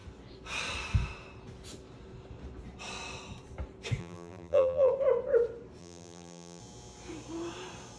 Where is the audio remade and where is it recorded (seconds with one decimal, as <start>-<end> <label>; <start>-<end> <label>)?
0.0-4.0 recorded; 4.0-4.9 remade; 4.9-5.8 recorded; 5.8-6.6 remade; 6.6-8.0 recorded